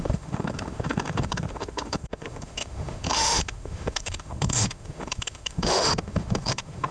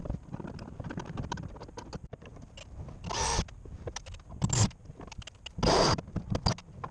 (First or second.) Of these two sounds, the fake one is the first